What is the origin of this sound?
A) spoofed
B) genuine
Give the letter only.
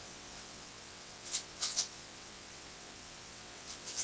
A